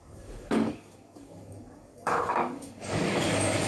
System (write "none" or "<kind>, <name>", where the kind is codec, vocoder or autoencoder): codec, DAC